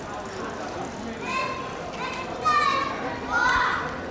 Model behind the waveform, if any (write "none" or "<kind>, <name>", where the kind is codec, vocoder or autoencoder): none